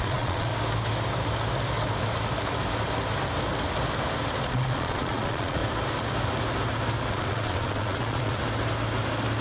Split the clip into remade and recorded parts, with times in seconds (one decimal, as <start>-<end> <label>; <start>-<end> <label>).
0.0-0.5 remade; 0.5-4.4 recorded; 4.4-5.6 remade; 5.6-7.1 recorded; 7.1-8.4 remade; 8.4-9.4 recorded